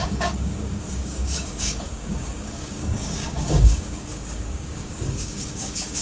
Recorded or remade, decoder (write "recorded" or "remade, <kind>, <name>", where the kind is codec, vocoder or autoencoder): remade, codec, DAC